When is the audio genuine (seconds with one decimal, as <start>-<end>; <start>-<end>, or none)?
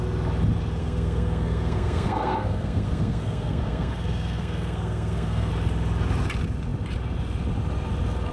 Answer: 0.0-0.8; 5.5-8.3